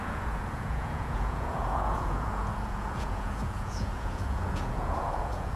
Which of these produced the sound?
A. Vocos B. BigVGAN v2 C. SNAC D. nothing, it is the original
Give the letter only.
A